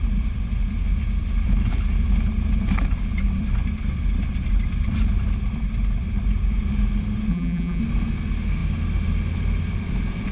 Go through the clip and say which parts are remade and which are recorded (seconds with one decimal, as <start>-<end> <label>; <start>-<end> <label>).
0.0-7.3 recorded; 7.3-7.8 remade; 7.8-10.3 recorded